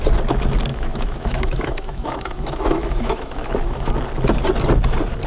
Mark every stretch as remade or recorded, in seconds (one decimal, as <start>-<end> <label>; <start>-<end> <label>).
0.0-0.7 recorded; 0.7-3.9 remade; 3.9-5.3 recorded